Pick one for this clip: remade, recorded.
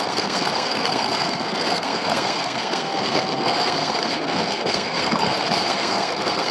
remade